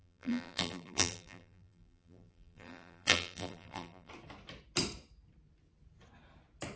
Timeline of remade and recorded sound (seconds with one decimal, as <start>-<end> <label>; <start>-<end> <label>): 0.0-4.1 remade; 4.1-6.8 recorded